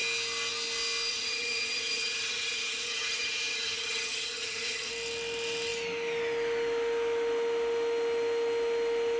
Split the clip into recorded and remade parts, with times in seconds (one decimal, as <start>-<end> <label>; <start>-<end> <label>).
0.0-1.1 recorded; 1.1-4.9 remade; 4.9-9.2 recorded